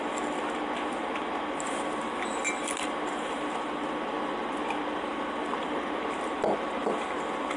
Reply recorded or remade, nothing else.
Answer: recorded